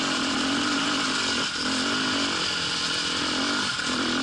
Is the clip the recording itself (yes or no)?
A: yes